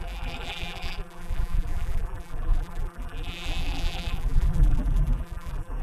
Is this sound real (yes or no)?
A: no